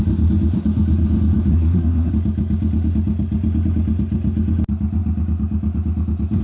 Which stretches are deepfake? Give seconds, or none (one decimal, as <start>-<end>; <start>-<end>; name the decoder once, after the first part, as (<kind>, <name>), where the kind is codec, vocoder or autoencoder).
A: 1.5-2.1 (codec, SNAC)